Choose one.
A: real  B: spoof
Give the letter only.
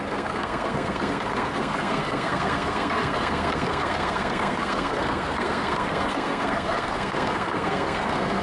B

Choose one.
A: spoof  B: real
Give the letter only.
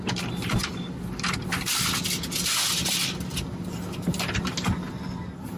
B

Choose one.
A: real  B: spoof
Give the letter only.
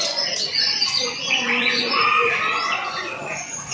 B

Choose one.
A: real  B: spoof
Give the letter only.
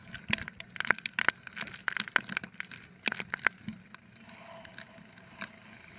A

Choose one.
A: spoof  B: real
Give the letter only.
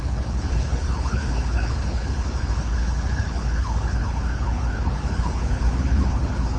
A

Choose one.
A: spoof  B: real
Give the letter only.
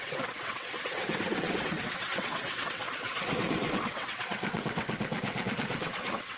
A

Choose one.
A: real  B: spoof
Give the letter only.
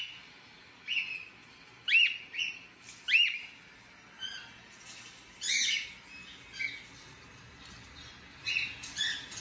A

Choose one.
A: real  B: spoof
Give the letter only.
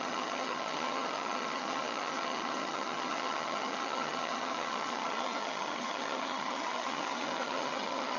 B